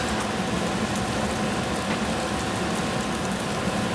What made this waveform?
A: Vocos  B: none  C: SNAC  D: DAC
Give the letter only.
B